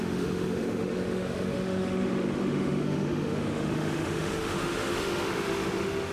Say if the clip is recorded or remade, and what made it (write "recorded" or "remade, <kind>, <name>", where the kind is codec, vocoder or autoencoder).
remade, autoencoder, DAC-VAE